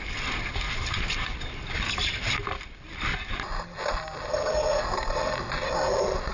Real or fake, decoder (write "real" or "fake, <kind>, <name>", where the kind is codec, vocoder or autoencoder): real